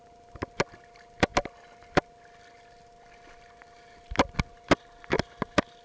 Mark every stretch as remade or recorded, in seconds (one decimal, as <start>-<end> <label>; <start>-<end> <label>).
0.0-5.8 recorded